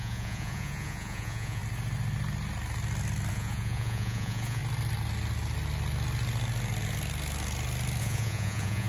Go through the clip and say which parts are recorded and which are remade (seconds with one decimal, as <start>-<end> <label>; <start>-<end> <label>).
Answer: 0.0-1.6 remade; 1.6-3.3 recorded; 3.3-4.6 remade; 4.6-8.0 recorded; 8.0-8.9 remade